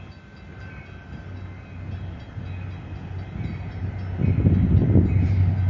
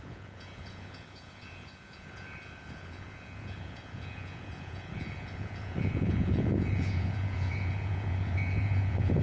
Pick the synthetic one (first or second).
second